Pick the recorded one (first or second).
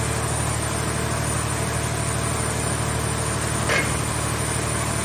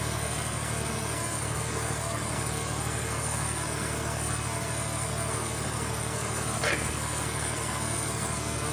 first